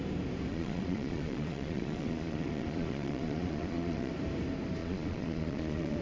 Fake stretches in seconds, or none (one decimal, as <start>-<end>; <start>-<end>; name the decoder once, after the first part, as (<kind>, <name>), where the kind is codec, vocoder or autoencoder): 0.5-4.1 (vocoder, Vocos); 4.8-6.0